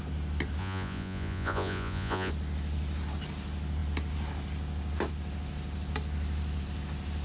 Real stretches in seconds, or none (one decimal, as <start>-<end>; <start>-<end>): 0.0-0.6; 2.3-7.2